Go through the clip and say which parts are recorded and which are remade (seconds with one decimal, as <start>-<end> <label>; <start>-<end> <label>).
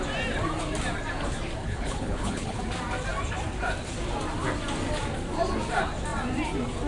0.0-1.6 recorded; 1.6-2.6 remade; 2.6-6.9 recorded